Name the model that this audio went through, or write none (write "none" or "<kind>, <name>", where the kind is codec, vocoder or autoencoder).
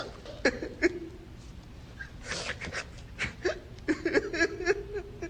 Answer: none